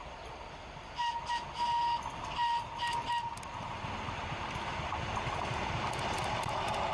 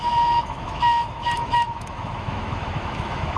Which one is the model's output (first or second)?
second